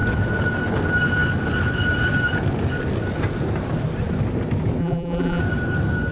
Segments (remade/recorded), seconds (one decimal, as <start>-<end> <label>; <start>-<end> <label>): 0.0-4.8 recorded; 4.8-5.4 remade; 5.4-6.1 recorded

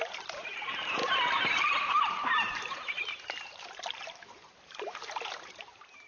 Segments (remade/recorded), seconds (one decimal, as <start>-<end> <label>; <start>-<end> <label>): 0.0-6.1 remade

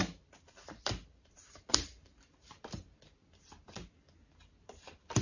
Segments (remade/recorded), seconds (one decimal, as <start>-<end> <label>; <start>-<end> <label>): 0.0-2.8 remade; 2.8-4.6 recorded; 4.6-5.2 remade

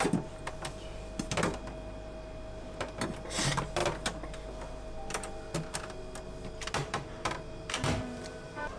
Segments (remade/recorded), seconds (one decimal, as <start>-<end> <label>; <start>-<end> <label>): 0.0-6.8 recorded; 6.8-8.8 remade

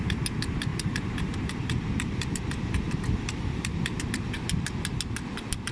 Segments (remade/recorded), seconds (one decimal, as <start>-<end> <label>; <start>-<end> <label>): 0.0-0.7 recorded; 0.7-4.1 remade; 4.1-5.7 recorded

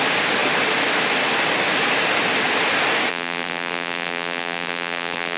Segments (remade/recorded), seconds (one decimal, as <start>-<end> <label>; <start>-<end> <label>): 0.0-3.1 recorded; 3.1-5.4 remade

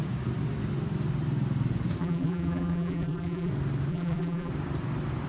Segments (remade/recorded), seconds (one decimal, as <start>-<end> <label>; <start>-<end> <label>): 0.0-2.0 recorded; 2.0-3.5 remade; 3.5-3.9 recorded; 3.9-4.5 remade; 4.5-5.3 recorded